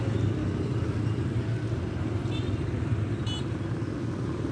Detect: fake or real real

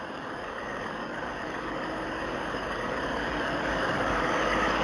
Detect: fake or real fake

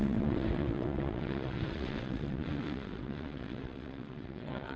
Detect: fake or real fake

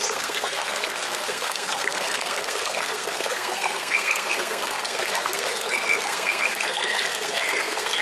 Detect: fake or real fake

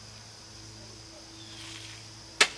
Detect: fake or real real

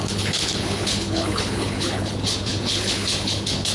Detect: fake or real fake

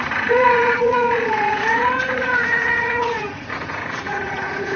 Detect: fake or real fake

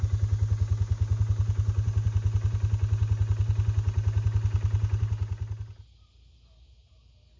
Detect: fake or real real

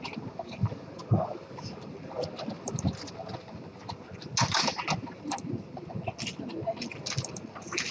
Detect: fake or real real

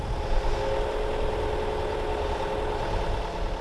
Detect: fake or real real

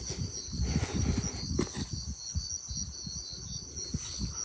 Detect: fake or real real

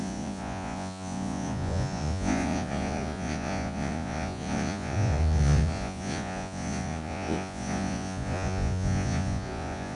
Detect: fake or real fake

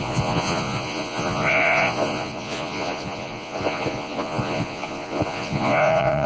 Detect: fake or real fake